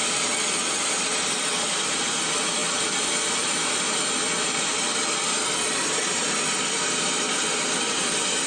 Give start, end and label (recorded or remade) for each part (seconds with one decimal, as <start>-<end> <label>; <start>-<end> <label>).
0.0-0.7 recorded; 0.7-2.6 remade; 2.6-3.3 recorded; 3.3-8.5 remade